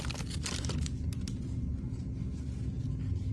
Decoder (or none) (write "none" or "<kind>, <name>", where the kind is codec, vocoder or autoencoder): none